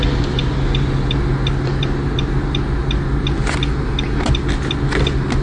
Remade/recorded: recorded